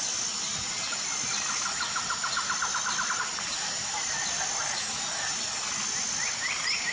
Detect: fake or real real